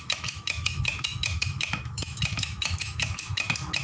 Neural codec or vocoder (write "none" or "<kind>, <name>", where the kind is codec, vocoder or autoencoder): autoencoder, DAC-VAE